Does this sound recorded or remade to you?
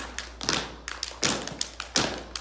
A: recorded